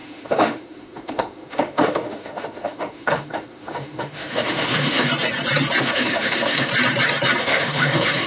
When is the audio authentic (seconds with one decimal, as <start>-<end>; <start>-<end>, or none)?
5.1-5.8; 6.7-7.4